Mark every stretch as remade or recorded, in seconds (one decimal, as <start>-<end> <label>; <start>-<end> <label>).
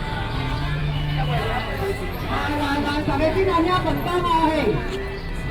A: 0.0-0.8 recorded; 0.8-1.4 remade; 1.4-1.8 recorded; 1.8-2.9 remade; 2.9-5.5 recorded